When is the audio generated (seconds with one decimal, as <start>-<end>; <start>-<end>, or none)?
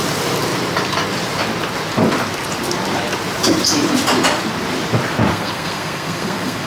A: 5.3-6.7